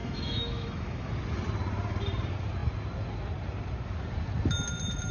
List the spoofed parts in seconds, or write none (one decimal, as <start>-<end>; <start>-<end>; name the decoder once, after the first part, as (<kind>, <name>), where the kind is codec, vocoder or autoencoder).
0.0-1.1 (autoencoder, DAC-VAE)

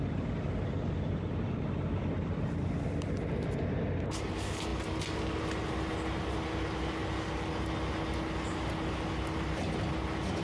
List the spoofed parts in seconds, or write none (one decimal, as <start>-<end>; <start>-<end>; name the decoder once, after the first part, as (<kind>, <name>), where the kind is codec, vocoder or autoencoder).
none